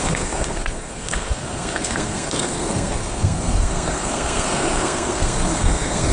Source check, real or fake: fake